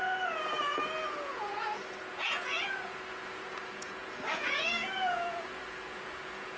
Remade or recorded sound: remade